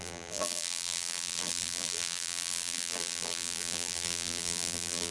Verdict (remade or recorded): remade